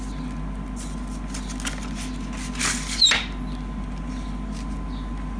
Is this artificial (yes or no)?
no